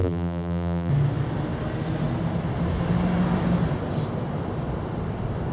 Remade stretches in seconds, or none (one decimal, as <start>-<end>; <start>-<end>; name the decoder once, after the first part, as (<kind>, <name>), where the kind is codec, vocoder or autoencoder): 0.0-0.9 (vocoder, BigVGAN v2)